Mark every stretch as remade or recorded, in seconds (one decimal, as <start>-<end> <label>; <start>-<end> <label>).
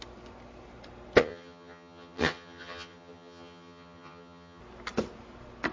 0.0-1.2 recorded; 1.2-4.6 remade; 4.6-5.7 recorded